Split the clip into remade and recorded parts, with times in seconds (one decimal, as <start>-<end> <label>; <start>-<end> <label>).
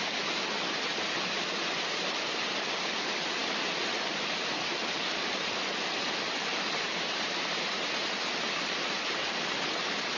0.0-0.9 recorded; 0.9-1.4 remade; 1.4-6.5 recorded; 6.5-8.2 remade; 8.2-10.2 recorded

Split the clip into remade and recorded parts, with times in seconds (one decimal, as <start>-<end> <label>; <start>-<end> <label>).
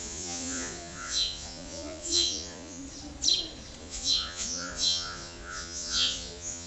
0.0-2.8 remade; 2.8-3.8 recorded; 3.8-6.7 remade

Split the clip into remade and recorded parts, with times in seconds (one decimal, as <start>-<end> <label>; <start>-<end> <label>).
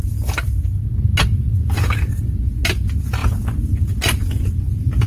0.0-5.1 recorded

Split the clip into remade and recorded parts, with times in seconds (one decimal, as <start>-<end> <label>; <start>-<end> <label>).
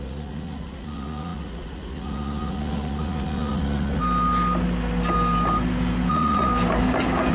0.0-4.0 remade; 4.0-6.1 recorded; 6.1-6.5 remade; 6.5-7.3 recorded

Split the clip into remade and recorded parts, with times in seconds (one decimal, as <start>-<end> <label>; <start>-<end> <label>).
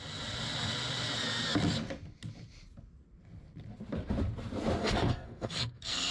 0.0-4.8 recorded; 4.8-6.1 remade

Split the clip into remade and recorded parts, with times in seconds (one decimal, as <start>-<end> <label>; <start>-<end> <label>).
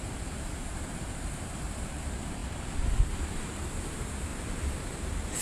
0.0-2.4 remade; 2.4-3.2 recorded; 3.2-4.3 remade; 4.3-5.4 recorded